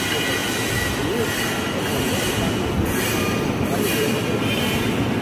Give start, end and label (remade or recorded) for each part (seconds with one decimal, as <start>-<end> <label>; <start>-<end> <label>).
0.0-5.2 recorded